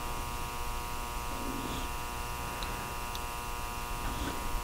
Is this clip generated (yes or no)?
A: no